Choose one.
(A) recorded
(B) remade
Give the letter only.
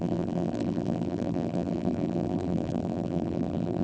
B